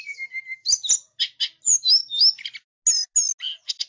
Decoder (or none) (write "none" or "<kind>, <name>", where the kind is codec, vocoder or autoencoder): none